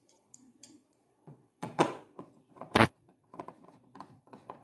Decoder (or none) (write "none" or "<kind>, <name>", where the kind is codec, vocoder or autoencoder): vocoder, Vocos